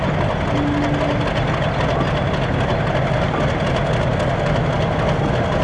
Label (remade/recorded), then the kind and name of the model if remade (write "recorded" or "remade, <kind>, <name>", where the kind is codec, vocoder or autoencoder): recorded